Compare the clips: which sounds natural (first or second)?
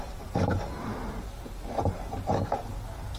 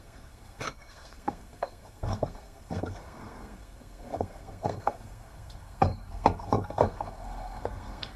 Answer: first